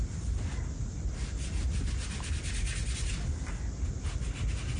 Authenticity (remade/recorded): recorded